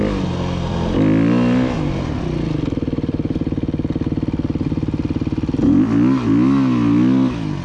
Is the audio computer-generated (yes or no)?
no